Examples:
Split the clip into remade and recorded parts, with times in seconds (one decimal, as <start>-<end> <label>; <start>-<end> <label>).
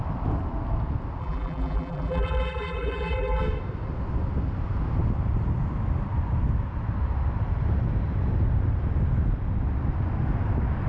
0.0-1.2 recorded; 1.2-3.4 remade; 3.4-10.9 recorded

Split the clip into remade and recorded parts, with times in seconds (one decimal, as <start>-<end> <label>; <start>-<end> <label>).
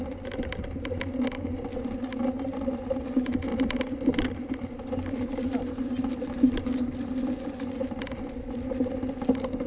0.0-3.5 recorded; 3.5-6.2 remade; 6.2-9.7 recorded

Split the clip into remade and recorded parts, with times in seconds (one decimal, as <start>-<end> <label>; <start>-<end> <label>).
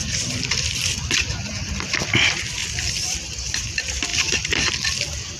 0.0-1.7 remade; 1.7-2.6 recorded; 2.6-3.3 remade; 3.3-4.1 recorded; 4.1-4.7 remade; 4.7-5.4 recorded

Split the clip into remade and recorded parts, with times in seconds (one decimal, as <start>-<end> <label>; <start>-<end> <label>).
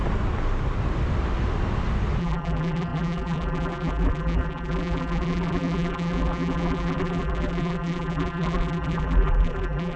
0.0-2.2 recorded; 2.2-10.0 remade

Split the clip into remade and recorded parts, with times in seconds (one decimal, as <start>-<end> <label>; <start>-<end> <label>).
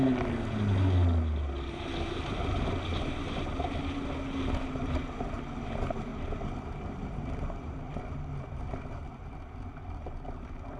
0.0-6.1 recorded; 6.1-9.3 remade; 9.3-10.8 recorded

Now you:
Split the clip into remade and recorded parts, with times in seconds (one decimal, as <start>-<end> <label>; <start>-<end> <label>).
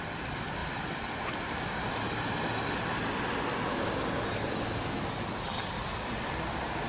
0.0-0.6 recorded; 0.6-1.9 remade; 1.9-5.6 recorded; 5.6-6.4 remade; 6.4-6.9 recorded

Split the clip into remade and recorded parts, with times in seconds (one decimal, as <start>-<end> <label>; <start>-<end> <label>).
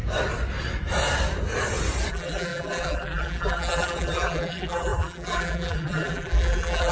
0.0-2.1 recorded; 2.1-6.9 remade